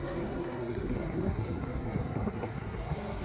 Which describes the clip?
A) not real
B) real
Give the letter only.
A